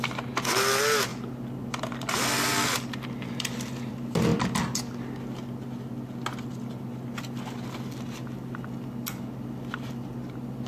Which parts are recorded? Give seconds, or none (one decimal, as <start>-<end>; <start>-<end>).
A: 0.0-10.7